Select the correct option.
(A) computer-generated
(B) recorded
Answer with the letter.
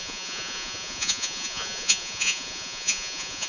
A